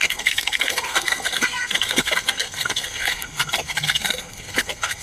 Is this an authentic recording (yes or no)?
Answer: no